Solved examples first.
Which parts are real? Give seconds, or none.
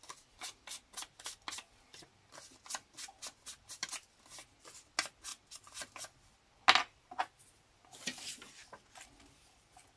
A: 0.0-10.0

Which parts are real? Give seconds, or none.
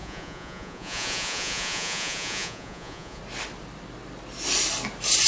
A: 3.2-5.3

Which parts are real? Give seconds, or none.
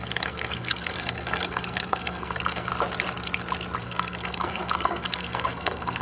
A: 2.7-3.8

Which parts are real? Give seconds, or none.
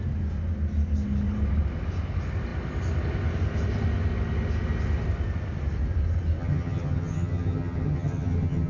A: 0.0-6.4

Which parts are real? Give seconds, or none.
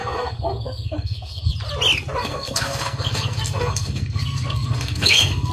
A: 1.5-2.2